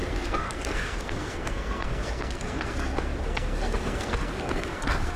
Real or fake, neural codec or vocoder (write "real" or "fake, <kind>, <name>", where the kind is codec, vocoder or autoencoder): fake, codec, SNAC